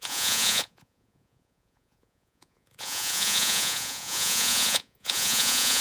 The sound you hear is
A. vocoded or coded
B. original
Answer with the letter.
A